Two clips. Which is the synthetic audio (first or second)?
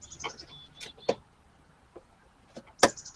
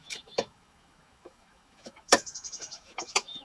second